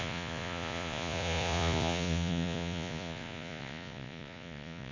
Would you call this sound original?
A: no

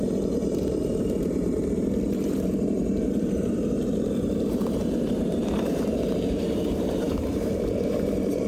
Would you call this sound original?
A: no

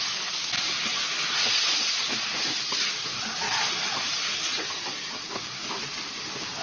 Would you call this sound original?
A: yes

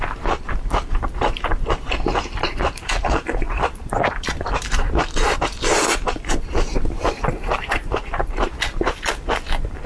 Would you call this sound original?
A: no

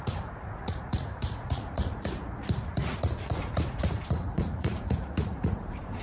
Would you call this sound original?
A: no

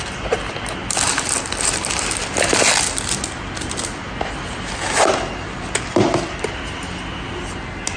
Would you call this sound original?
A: yes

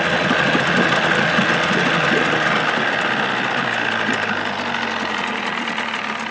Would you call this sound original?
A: yes